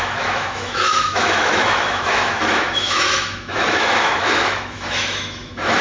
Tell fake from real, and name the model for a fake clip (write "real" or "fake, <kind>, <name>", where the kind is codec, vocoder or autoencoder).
fake, autoencoder, DAC-VAE